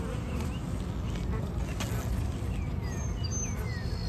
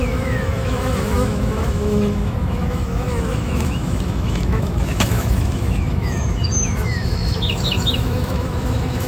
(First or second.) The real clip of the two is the first